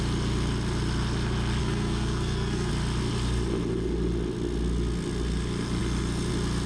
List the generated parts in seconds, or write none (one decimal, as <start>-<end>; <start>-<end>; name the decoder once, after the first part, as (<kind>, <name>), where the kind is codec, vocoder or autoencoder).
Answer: 1.6-2.7 (codec, SNAC)